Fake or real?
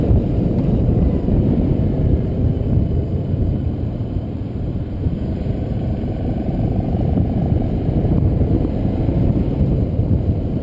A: fake